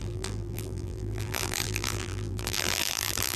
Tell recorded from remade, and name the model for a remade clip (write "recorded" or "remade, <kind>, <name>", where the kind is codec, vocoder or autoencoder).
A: remade, vocoder, BigVGAN v2